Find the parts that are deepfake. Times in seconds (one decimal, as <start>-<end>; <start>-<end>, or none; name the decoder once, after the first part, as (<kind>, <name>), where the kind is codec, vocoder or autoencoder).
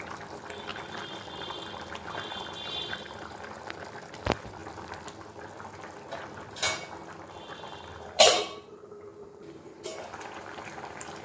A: 0.0-4.6 (vocoder, BigVGAN v2); 7.4-11.2